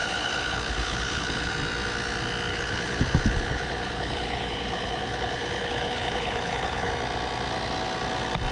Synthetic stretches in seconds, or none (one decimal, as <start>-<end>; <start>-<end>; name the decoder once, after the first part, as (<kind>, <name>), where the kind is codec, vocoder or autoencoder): 0.0-1.5 (codec, HILCodec); 2.5-6.9